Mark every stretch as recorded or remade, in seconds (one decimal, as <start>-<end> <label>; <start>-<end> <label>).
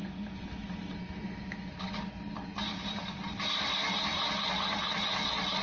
0.0-5.6 recorded